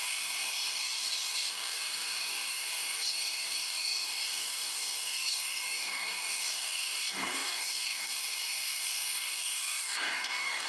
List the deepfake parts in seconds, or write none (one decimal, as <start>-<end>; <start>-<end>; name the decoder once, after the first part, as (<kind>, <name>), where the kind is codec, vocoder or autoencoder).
0.0-10.7 (codec, DAC)